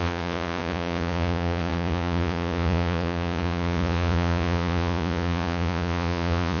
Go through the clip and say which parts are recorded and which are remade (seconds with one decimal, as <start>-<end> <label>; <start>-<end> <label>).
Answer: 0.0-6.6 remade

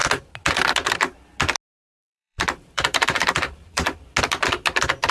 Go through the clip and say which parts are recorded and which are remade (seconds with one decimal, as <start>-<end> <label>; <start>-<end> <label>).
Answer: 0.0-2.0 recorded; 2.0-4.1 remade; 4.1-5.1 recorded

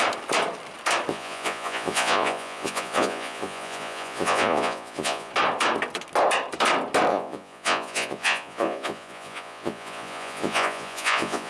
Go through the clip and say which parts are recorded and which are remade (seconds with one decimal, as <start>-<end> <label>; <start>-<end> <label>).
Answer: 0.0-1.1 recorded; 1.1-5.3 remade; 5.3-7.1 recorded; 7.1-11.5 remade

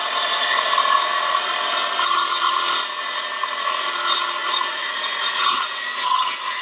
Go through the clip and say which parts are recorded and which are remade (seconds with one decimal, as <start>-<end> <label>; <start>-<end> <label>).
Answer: 0.0-4.4 recorded; 4.4-4.9 remade; 4.9-6.6 recorded

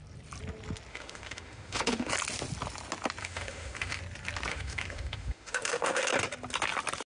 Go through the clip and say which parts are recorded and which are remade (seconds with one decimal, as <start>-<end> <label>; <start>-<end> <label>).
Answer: 0.0-0.9 recorded; 0.9-2.1 remade; 2.1-3.2 recorded; 3.2-4.0 remade; 4.0-4.5 recorded; 4.5-6.1 remade; 6.1-7.1 recorded